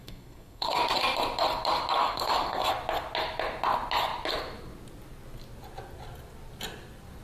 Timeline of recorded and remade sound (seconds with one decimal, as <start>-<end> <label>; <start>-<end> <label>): 0.0-0.8 remade; 0.8-2.0 recorded; 2.0-2.7 remade; 2.7-7.2 recorded